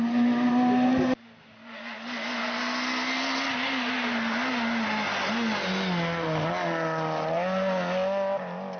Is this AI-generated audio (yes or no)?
no